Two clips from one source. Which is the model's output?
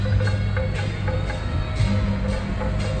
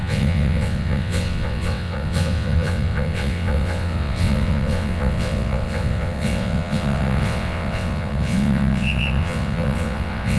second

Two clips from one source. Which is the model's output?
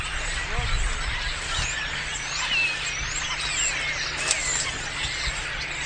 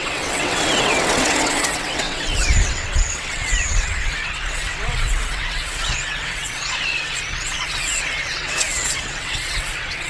second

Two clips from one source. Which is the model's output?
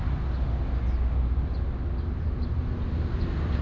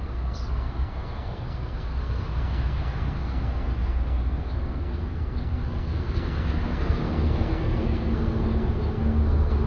second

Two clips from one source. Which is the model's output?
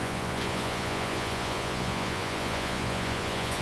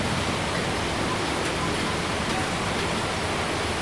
first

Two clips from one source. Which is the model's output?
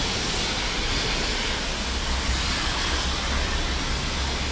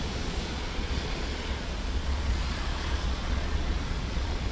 second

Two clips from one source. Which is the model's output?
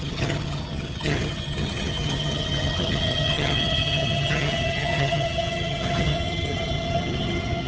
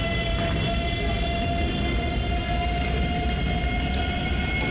first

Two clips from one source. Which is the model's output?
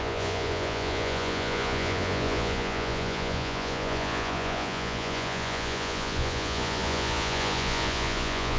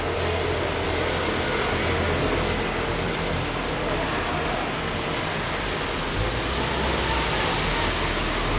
first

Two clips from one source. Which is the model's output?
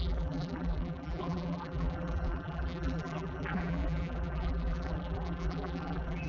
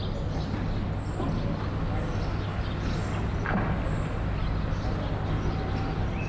first